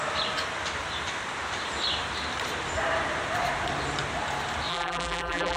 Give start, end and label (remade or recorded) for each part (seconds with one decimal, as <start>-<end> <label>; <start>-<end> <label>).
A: 0.0-4.7 recorded; 4.7-5.6 remade